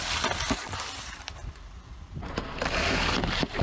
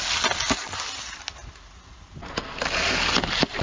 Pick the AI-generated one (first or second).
first